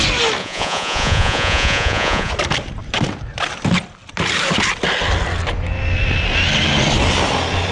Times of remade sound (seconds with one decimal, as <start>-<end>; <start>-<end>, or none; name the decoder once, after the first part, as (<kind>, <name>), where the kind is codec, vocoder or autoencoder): 0.4-2.3 (vocoder, Vocos)